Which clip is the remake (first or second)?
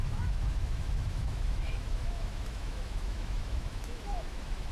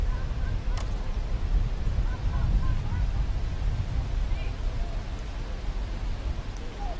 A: first